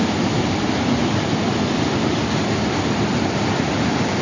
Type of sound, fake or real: real